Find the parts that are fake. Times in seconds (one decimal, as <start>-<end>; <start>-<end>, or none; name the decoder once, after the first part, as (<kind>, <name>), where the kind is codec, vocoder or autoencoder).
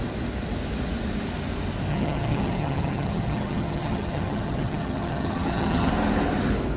1.9-5.9 (vocoder, HiFi-GAN)